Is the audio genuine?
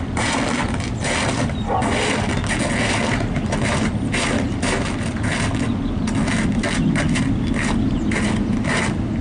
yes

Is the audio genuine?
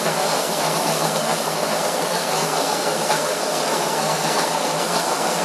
no